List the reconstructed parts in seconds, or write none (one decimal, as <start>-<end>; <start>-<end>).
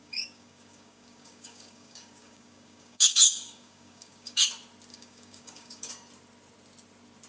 0.0-4.4; 4.9-5.9